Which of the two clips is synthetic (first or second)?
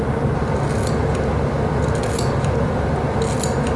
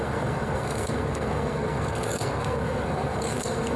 second